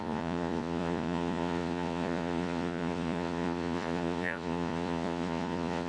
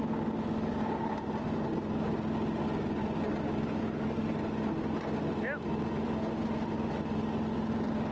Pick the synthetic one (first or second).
first